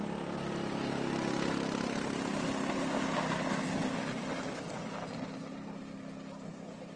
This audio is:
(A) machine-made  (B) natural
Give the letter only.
B